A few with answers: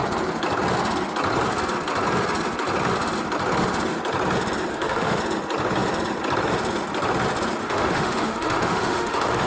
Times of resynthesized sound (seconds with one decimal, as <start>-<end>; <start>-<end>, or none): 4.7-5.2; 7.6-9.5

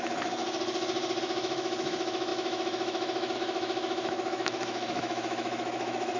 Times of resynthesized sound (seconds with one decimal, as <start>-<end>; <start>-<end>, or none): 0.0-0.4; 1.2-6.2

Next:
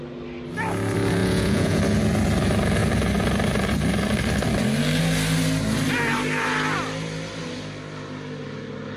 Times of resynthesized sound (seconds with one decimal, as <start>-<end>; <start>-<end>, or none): 1.2-1.8

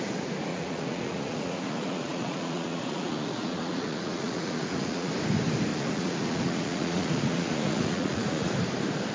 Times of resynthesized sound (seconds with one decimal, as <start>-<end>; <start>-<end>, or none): 0.5-5.1; 5.7-8.5